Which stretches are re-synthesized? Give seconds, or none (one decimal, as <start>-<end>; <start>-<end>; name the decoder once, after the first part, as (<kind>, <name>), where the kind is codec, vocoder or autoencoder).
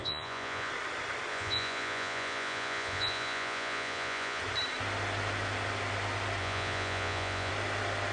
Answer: 0.0-0.7 (vocoder, Vocos); 1.3-4.4; 6.4-7.5